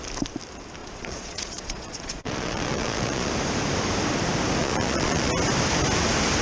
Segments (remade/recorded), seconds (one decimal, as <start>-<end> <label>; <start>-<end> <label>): 0.0-0.8 recorded; 0.8-3.3 remade; 3.3-4.6 recorded; 4.6-5.3 remade; 5.3-6.4 recorded